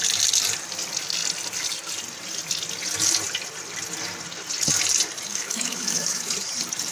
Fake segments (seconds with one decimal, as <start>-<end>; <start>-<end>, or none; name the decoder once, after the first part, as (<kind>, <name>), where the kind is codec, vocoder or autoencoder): 5.3-6.3 (autoencoder, DAC-VAE)

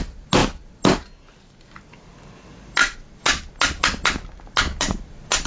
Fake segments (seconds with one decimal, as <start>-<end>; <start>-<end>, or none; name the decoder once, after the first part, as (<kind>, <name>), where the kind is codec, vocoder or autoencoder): none